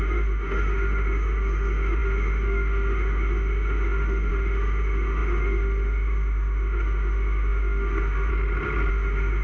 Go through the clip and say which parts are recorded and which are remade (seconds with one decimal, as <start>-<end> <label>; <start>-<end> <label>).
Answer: 0.0-8.3 remade; 8.3-8.9 recorded; 8.9-9.4 remade